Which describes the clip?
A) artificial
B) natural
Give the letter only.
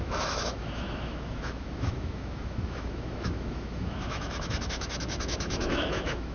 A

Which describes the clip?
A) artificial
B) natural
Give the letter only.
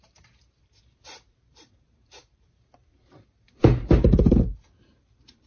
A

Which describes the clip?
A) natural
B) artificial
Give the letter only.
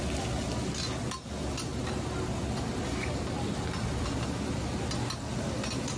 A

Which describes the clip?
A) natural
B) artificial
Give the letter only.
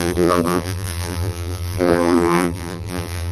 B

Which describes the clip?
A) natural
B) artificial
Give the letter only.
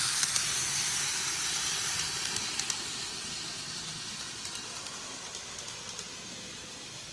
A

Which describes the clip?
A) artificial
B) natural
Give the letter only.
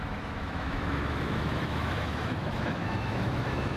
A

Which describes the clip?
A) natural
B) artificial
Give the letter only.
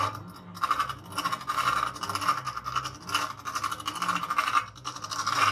A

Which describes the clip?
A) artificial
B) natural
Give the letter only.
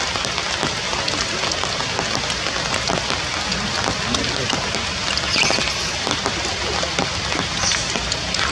B